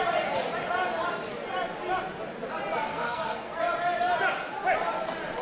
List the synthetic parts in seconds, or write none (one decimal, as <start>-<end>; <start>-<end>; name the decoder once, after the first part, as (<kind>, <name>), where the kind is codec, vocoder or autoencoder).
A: 2.9-3.6 (codec, SNAC)